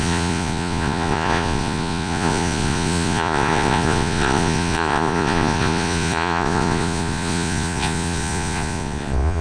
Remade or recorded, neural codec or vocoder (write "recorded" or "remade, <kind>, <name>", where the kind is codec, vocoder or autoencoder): remade, vocoder, Vocos